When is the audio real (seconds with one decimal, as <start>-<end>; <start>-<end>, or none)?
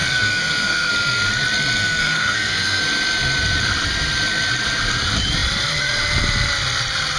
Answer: 0.9-1.8; 2.8-7.2